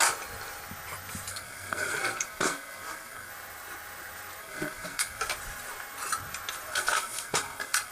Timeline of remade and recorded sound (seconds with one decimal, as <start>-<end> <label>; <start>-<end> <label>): 0.0-1.3 recorded; 1.3-3.3 remade; 3.3-4.4 recorded; 4.4-5.2 remade; 5.2-6.7 recorded; 6.7-7.9 remade